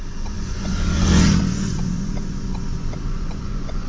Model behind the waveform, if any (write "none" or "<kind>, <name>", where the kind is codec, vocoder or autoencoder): vocoder, Vocos